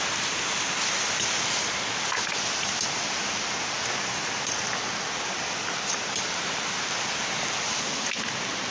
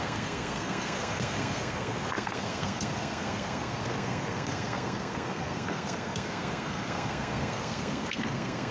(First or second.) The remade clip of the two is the second